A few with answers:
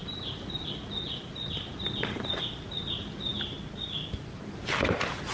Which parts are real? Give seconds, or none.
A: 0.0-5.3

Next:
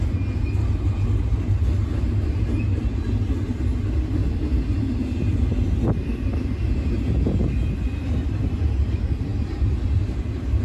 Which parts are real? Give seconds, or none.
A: 0.0-10.6

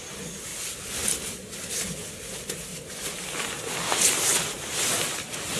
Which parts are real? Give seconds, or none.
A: 0.0-5.6

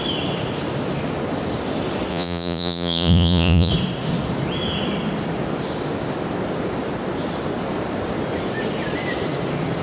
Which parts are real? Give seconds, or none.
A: 0.0-2.1; 3.7-9.8